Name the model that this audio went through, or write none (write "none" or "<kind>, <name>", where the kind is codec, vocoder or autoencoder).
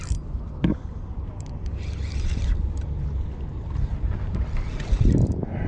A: none